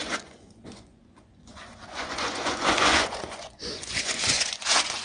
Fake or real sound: fake